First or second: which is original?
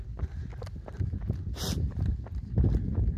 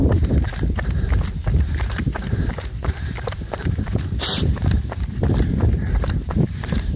first